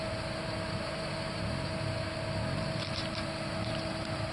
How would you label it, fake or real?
real